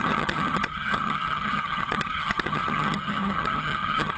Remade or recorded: remade